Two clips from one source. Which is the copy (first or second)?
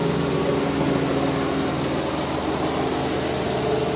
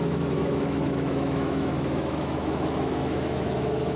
second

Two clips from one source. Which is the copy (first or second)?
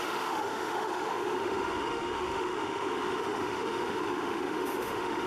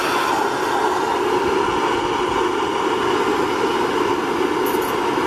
first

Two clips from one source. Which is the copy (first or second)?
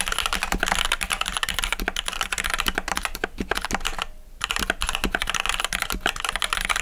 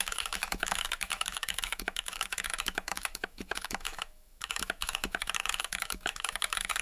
second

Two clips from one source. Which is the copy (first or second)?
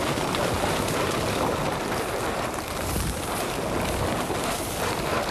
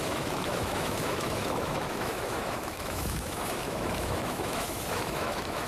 second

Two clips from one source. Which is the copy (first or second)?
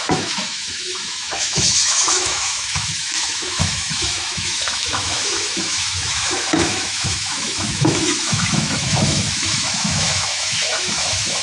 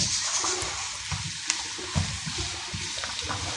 first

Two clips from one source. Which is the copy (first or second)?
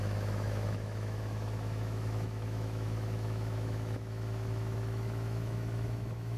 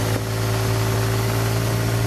first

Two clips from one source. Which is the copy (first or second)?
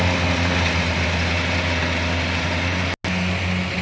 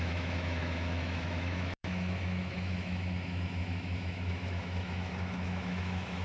second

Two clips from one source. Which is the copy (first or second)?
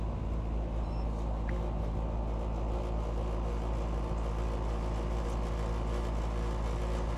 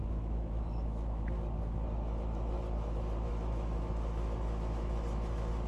second